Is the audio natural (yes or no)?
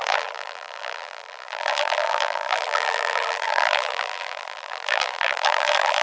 no